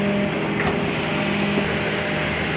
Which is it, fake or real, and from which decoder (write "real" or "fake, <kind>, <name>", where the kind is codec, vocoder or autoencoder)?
real